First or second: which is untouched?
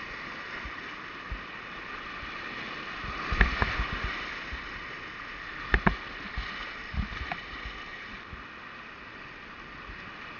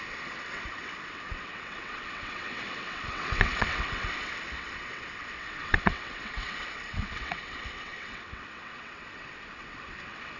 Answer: first